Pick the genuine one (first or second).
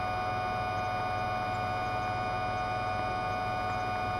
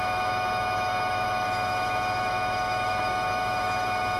first